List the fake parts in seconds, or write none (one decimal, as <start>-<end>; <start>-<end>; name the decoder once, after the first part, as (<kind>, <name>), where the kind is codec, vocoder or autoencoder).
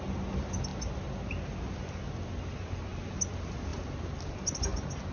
none